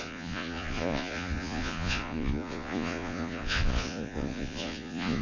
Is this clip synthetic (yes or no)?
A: yes